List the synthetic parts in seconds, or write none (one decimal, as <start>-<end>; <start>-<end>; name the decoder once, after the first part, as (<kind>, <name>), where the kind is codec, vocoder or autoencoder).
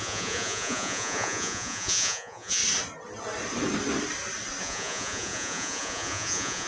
0.0-2.6 (vocoder, Vocos); 4.6-6.7